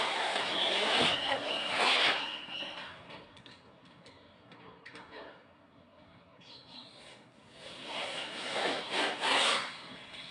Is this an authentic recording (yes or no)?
no